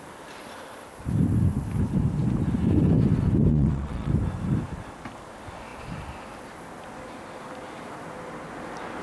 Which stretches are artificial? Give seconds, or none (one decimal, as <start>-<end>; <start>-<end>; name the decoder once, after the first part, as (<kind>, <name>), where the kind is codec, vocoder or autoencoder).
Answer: 3.5-4.1 (vocoder, Vocos)